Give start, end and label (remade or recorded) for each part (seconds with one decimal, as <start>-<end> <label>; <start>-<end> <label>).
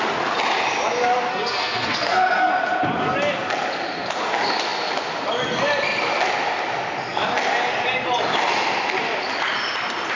0.0-1.3 recorded; 1.3-2.5 remade; 2.5-10.1 recorded